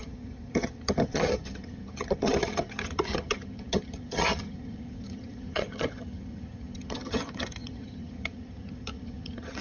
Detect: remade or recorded remade